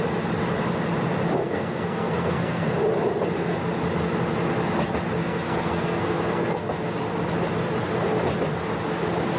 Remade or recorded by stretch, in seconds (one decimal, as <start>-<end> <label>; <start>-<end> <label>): 0.0-1.4 recorded; 1.4-2.7 remade; 2.7-5.2 recorded; 5.2-6.9 remade; 6.9-9.4 recorded